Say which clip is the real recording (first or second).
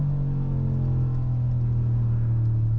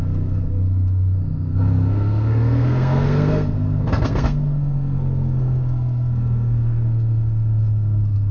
first